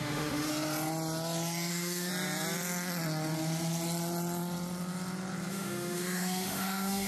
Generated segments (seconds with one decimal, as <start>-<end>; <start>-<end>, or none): 0.0-0.5; 1.7-2.1; 5.5-7.1